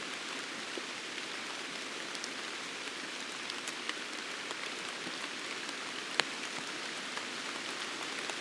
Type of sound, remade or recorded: remade